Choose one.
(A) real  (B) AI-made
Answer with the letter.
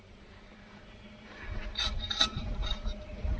B